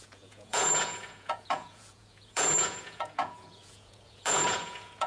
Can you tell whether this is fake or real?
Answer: fake